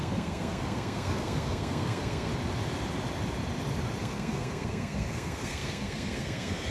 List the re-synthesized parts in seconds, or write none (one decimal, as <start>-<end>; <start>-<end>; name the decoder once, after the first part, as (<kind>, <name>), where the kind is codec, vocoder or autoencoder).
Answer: 0.0-2.3 (codec, SNAC); 4.0-6.7